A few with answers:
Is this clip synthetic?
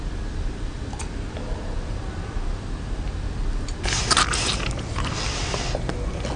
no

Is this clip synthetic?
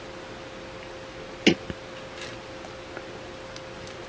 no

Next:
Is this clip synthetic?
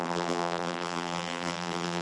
yes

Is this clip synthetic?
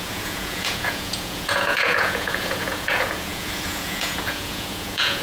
yes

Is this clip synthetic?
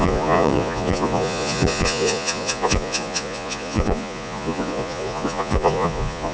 yes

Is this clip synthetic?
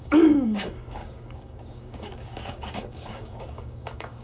yes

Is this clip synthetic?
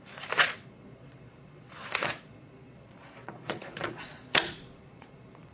yes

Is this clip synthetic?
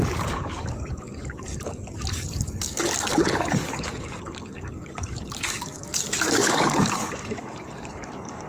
yes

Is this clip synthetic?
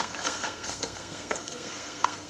yes